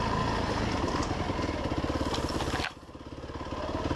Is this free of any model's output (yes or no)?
yes